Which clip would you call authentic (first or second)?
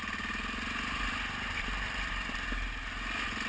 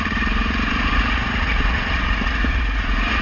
first